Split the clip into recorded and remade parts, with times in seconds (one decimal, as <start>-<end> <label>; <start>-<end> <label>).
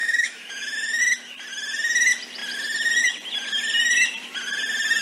0.0-1.0 remade; 1.0-5.0 recorded